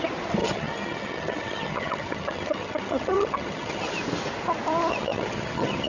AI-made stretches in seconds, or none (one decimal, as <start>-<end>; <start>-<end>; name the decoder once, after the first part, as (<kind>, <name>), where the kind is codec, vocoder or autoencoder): 0.4-3.9 (vocoder, HiFi-GAN); 4.9-5.9